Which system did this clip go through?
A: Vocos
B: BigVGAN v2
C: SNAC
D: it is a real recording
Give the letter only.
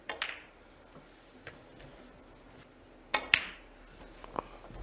D